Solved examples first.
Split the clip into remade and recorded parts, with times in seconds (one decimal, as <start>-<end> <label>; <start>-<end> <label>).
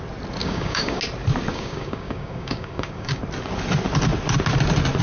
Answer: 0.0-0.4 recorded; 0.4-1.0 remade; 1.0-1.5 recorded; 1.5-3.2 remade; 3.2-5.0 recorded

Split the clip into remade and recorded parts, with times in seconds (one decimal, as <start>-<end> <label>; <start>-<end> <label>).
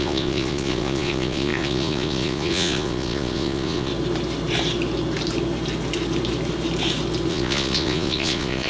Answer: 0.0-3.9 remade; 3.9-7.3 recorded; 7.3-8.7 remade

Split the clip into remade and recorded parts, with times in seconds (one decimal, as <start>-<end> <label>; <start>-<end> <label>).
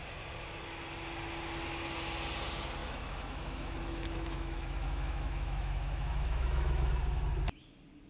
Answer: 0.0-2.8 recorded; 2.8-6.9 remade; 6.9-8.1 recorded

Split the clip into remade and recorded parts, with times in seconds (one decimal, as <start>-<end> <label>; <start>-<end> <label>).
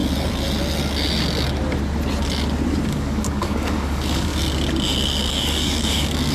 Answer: 0.0-2.9 recorded; 2.9-4.3 remade; 4.3-5.3 recorded; 5.3-6.3 remade